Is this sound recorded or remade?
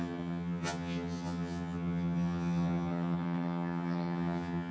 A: remade